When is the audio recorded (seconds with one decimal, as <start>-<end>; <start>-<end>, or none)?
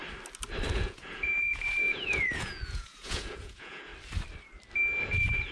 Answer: 0.0-0.7; 3.9-5.0